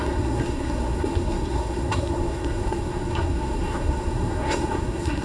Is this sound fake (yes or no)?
yes